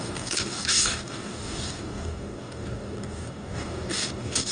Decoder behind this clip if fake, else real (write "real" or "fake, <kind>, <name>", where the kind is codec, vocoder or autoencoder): fake, codec, DAC